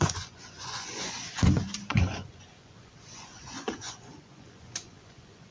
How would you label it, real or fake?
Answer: fake